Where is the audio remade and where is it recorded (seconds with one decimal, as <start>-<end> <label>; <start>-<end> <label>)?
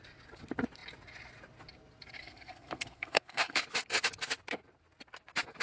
0.0-2.2 recorded; 2.2-3.6 remade; 3.6-5.6 recorded